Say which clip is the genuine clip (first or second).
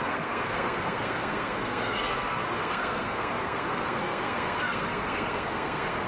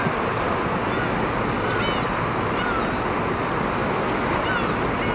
second